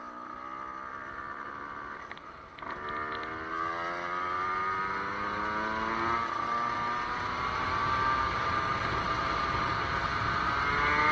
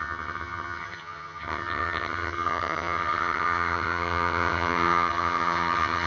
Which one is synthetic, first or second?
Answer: second